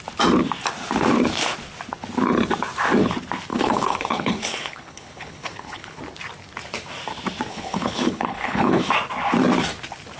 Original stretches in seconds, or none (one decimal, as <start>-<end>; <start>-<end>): 0.0-3.5; 6.0-7.5; 8.9-10.2